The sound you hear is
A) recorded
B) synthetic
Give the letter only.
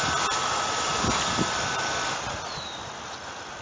B